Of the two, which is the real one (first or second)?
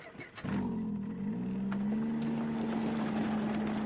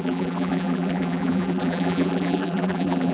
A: first